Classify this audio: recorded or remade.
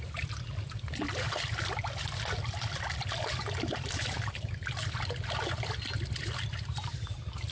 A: recorded